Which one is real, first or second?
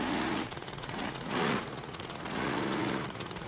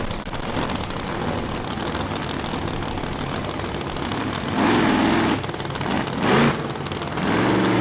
second